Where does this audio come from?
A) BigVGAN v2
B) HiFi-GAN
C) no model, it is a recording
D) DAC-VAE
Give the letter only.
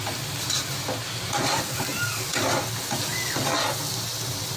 C